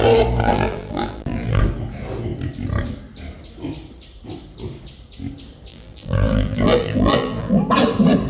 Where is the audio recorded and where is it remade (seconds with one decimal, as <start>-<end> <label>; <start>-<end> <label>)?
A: 0.0-0.4 recorded; 0.4-1.6 remade; 1.6-5.7 recorded; 5.7-7.6 remade; 7.6-8.3 recorded